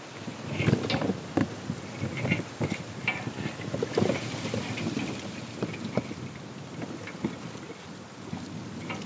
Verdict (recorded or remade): recorded